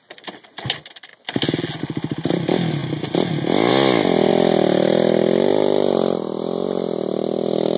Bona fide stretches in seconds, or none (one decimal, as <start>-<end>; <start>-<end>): 0.0-7.8